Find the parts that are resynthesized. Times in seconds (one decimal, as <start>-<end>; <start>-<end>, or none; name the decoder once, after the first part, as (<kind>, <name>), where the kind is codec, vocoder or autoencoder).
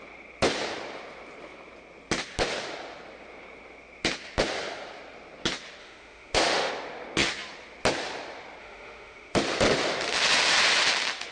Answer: 5.8-6.7 (autoencoder, DAC-VAE); 8.6-9.4